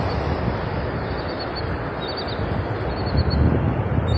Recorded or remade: recorded